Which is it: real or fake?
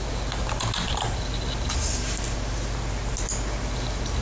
real